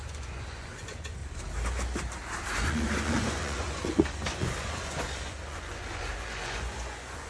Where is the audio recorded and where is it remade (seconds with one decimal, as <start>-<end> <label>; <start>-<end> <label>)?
0.0-1.2 remade; 1.2-2.5 recorded; 2.5-7.3 remade